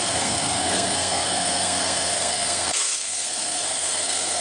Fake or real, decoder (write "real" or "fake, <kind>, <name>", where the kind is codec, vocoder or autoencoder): fake, codec, SNAC